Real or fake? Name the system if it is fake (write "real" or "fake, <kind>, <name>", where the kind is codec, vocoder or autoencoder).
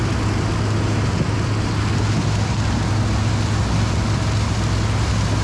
real